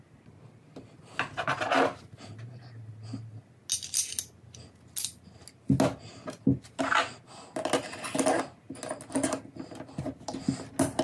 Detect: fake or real real